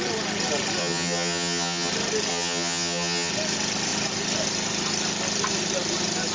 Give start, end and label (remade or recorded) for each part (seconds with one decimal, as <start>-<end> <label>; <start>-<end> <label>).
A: 0.0-0.8 recorded; 0.8-1.9 remade; 1.9-2.3 recorded; 2.3-3.3 remade; 3.3-6.3 recorded